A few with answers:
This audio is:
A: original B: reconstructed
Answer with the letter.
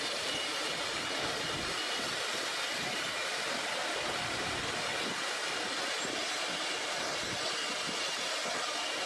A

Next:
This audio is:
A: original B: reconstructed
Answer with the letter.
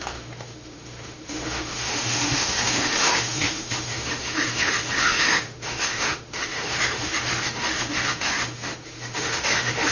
B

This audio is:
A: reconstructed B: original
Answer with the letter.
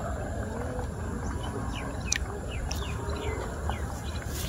B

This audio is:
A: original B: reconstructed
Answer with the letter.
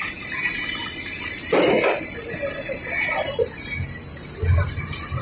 A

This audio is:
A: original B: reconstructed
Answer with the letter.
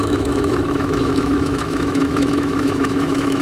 B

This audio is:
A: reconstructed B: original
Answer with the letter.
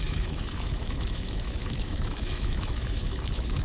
A